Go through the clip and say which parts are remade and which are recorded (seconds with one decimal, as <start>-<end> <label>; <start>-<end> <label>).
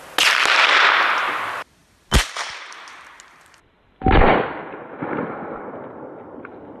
0.0-6.8 recorded